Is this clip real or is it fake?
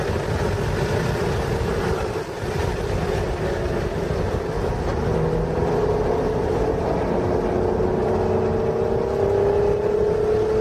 real